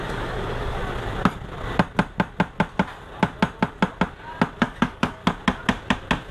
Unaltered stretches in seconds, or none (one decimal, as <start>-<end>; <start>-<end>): 0.8-4.6; 5.2-6.3